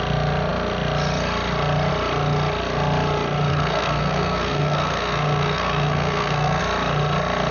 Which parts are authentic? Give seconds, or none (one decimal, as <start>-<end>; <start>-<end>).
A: 0.0-3.5; 6.6-7.5